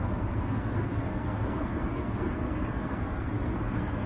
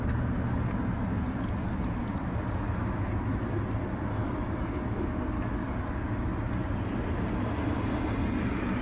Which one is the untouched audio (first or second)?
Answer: second